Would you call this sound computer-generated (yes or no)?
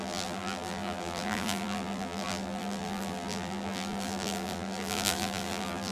yes